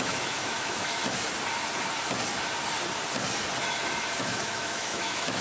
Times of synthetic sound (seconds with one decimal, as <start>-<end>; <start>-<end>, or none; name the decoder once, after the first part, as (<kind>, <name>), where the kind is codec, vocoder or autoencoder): 0.0-1.0 (autoencoder, DAC-VAE); 4.2-5.4